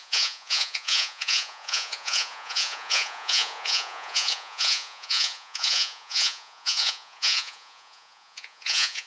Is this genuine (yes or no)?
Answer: no